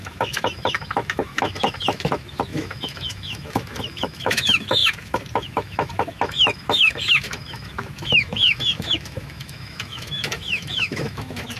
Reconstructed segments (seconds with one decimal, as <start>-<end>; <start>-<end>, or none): 0.0-11.6